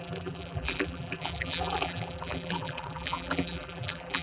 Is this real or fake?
fake